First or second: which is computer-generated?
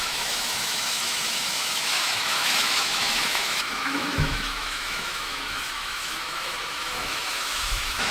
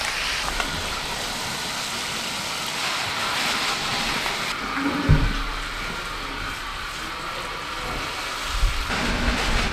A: first